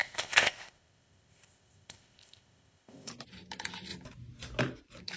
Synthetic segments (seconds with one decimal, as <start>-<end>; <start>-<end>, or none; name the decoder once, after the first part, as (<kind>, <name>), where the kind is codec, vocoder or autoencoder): 0.0-3.1 (codec, ZipCodec)